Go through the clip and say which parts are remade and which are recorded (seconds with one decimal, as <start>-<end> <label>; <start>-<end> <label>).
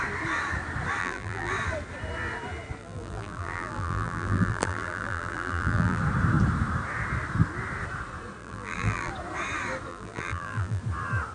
0.0-1.0 recorded; 1.0-1.5 remade; 1.5-2.8 recorded; 2.8-6.0 remade; 6.0-8.4 recorded; 8.4-9.1 remade; 9.1-9.9 recorded; 9.9-10.8 remade; 10.8-11.3 recorded